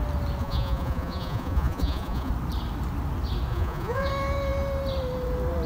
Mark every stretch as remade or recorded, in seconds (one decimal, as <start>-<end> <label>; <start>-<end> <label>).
0.0-0.4 recorded; 0.4-2.3 remade; 2.3-3.5 recorded; 3.5-4.1 remade; 4.1-5.7 recorded